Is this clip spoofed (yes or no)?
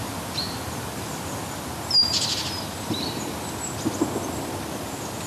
no